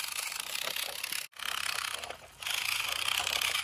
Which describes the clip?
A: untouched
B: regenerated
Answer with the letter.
A